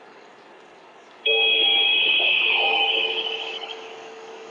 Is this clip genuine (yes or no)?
no